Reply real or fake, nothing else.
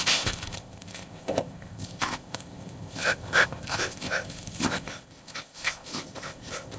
fake